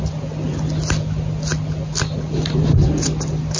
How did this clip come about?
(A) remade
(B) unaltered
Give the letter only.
B